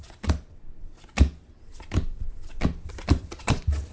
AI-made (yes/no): no